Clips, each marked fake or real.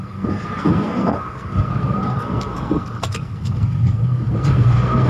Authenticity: fake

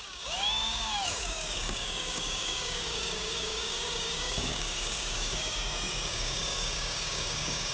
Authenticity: fake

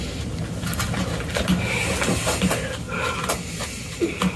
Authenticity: real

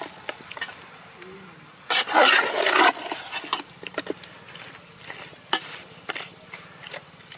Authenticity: real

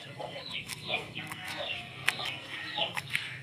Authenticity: fake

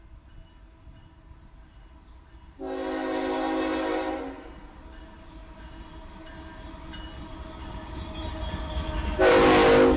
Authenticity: real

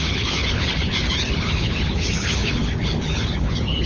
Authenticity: fake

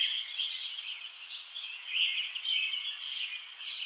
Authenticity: fake